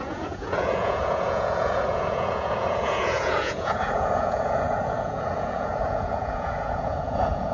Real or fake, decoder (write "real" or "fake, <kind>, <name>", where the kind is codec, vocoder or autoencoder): fake, vocoder, Vocos